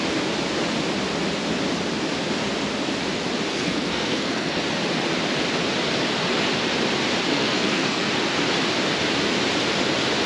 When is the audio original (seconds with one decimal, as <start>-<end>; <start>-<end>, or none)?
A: 0.0-3.5; 4.6-7.3; 8.1-10.3